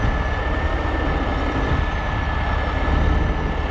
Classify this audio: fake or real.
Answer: real